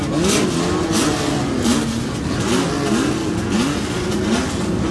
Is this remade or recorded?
recorded